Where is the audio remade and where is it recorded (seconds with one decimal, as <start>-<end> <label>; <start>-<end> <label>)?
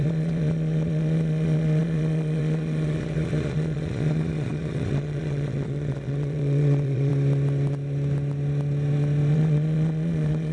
0.0-7.1 remade; 7.1-9.3 recorded; 9.3-10.5 remade